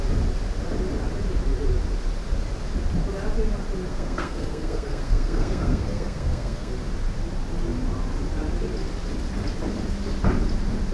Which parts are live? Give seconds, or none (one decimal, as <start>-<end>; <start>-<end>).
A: 0.0-3.9; 6.7-10.9